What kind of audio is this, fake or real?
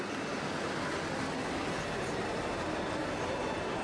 real